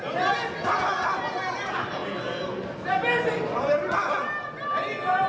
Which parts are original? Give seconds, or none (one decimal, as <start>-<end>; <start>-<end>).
0.0-5.3